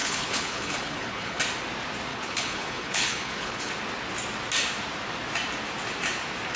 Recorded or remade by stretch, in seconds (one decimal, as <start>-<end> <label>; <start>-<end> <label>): 0.0-1.4 remade; 1.4-2.1 recorded; 2.1-3.7 remade; 3.7-6.6 recorded